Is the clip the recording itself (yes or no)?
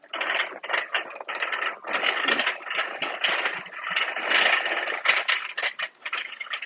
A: yes